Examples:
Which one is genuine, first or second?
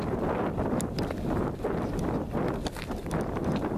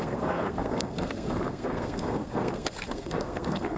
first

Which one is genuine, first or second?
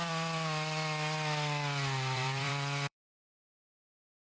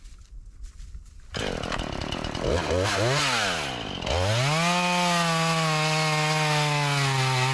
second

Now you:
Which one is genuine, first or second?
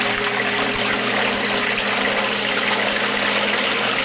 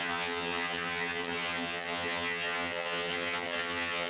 first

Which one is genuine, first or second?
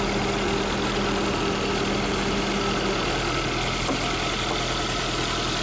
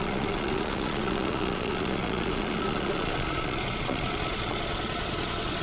first